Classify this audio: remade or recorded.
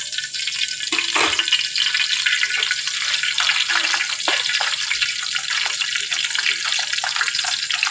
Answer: recorded